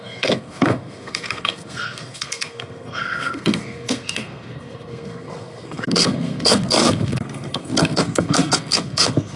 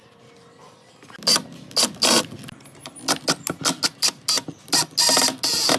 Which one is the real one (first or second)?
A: second